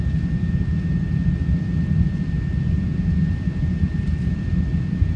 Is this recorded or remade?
recorded